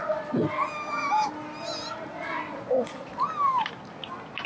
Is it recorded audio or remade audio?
recorded